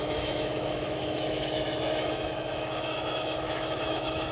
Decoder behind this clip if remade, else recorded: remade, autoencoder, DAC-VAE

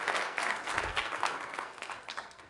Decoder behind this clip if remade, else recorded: remade, codec, SNAC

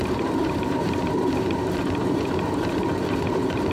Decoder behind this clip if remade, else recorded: remade, vocoder, BigVGAN v2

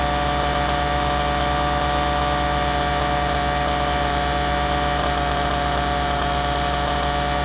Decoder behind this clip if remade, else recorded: recorded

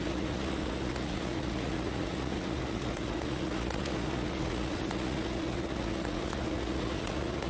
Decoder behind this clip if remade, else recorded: remade, vocoder, Vocos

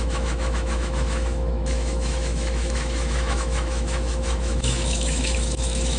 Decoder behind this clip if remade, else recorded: remade, autoencoder, DAC-VAE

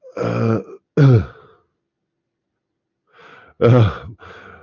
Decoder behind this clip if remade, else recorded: recorded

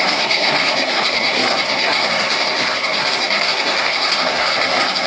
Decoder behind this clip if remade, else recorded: remade, codec, SNAC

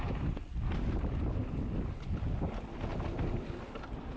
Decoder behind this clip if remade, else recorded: recorded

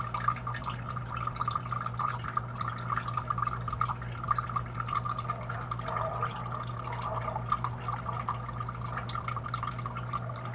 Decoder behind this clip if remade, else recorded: recorded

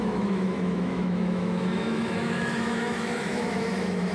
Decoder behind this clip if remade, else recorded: remade, autoencoder, DAC-VAE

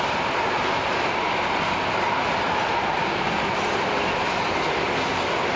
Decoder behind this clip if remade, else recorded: recorded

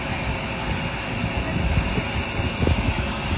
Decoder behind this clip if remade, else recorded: recorded